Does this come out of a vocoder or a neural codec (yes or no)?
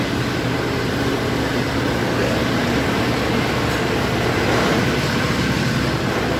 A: no